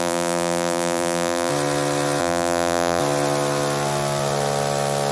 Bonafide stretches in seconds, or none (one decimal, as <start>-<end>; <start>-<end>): 1.5-2.2; 3.0-5.1